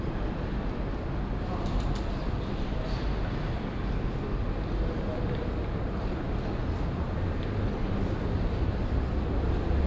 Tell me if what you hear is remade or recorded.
recorded